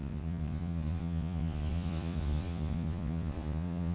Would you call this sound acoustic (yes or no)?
no